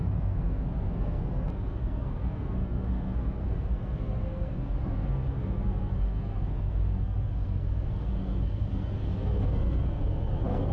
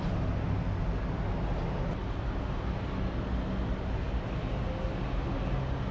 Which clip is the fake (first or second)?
first